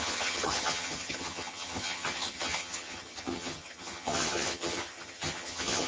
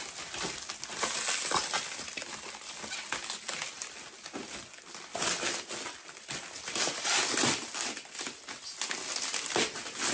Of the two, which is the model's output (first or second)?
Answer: first